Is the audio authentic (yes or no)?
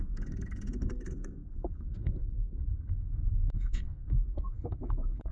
no